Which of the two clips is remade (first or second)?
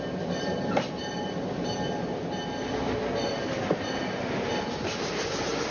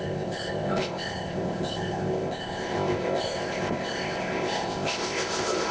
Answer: second